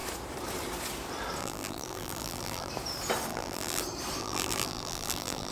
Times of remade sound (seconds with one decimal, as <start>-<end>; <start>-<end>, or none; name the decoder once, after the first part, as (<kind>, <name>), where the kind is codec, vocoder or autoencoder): 1.4-2.7 (vocoder, BigVGAN v2); 3.3-3.8; 4.2-5.5